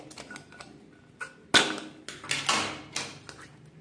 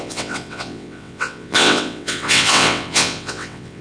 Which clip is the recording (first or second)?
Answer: first